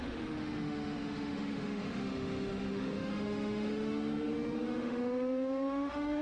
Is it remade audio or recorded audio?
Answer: remade